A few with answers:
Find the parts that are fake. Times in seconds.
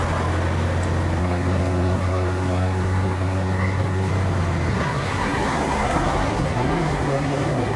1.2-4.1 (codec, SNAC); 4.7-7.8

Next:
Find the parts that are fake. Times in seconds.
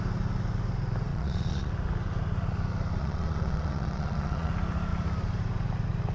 1.1-1.7 (vocoder, Vocos); 3.0-4.5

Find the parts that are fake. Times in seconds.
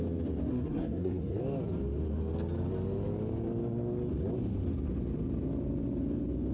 0.5-1.4 (codec, SNAC)